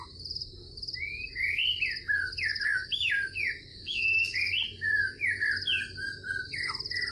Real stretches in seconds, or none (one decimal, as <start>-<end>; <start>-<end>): 0.0-2.5; 3.1-3.7; 4.5-7.1